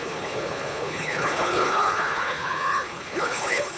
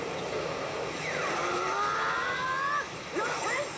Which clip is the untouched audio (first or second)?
second